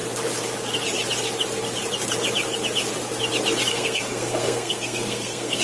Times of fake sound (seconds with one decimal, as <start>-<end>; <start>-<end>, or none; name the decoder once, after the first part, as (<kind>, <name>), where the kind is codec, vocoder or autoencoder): 3.7-5.6 (codec, SNAC)

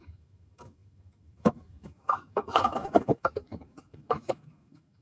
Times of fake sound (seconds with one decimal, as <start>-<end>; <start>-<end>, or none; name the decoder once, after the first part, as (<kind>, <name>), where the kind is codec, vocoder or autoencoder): 0.0-5.0 (autoencoder, DAC-VAE)

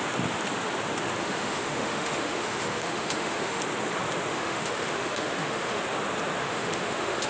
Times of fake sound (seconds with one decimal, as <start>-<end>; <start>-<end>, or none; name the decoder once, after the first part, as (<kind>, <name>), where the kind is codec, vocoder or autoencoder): 1.2-3.6 (autoencoder, DAC-VAE); 4.3-5.8; 6.4-7.3

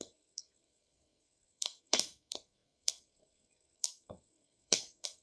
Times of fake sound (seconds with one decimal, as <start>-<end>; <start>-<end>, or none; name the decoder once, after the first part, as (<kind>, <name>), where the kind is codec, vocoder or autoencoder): 0.0-5.2 (codec, SNAC)

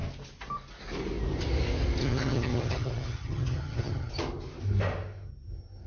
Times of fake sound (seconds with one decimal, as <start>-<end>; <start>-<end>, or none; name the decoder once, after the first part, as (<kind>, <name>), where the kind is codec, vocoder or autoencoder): 2.0-4.1 (vocoder, HiFi-GAN)

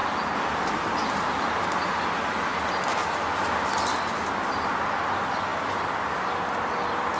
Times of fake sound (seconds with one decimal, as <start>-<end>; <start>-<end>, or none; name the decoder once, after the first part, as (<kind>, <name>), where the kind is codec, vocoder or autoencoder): none

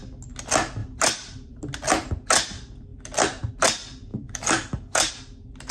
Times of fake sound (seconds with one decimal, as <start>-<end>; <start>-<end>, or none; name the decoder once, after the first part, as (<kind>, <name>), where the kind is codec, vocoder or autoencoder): 4.1-5.1 (codec, DAC)